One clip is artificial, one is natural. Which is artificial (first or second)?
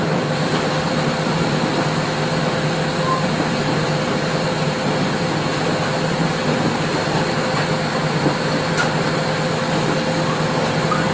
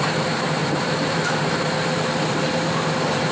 second